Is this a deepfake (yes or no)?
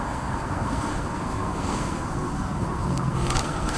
yes